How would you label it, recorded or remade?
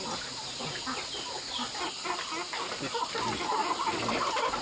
recorded